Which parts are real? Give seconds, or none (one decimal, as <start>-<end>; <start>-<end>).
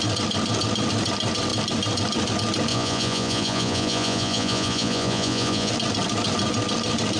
0.0-2.7; 5.7-7.2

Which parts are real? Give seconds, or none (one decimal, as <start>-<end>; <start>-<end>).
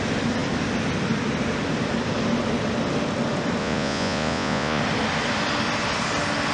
0.0-3.6; 4.8-6.5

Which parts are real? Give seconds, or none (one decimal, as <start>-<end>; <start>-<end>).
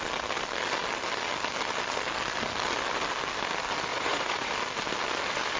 0.0-3.9; 4.5-5.6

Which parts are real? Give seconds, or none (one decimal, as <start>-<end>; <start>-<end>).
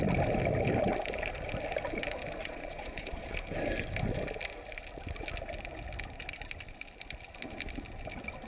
0.0-2.4; 3.3-8.5